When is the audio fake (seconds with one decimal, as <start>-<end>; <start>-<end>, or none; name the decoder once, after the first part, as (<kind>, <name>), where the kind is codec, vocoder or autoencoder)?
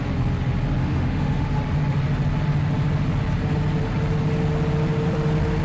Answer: 0.8-1.5 (autoencoder, DAC-VAE)